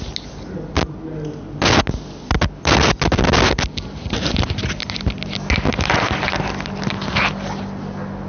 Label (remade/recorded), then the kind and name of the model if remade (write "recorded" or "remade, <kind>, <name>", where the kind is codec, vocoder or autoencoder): recorded